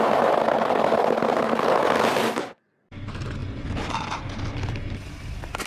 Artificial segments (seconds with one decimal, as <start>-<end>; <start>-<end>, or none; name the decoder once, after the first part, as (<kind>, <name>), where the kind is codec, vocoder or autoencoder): 3.4-4.4 (vocoder, BigVGAN v2)